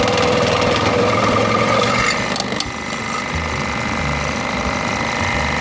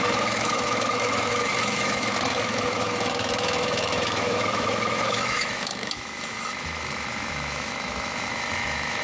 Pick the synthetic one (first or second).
second